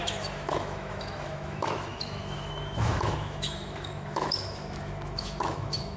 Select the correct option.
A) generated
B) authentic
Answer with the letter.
A